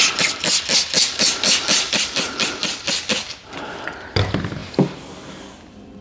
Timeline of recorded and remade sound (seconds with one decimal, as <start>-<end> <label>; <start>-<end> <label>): 0.0-6.0 recorded